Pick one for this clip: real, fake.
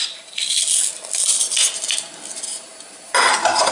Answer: real